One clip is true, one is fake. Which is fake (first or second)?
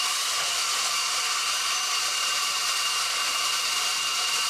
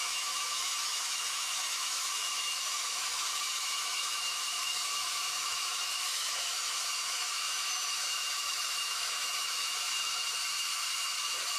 second